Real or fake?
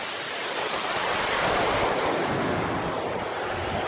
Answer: real